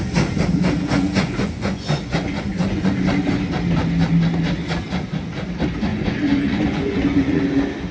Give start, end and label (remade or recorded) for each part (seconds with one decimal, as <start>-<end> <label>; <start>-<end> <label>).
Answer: 0.0-0.8 recorded; 0.8-2.9 remade; 2.9-5.9 recorded; 5.9-7.4 remade; 7.4-7.9 recorded

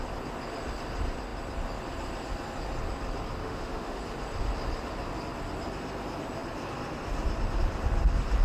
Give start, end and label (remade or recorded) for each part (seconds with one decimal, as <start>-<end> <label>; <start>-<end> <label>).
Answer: 0.0-3.4 recorded; 3.4-4.0 remade; 4.0-8.4 recorded

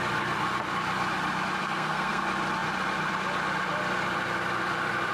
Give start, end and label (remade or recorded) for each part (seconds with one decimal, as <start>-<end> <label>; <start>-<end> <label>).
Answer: 0.0-1.6 recorded; 1.6-2.2 remade; 2.2-5.1 recorded